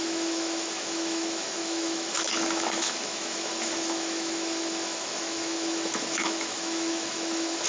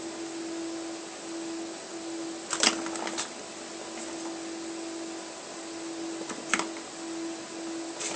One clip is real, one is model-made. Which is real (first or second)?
second